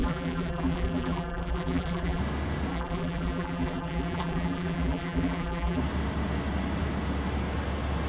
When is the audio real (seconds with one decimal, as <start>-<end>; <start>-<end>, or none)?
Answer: 2.2-2.7; 5.8-8.1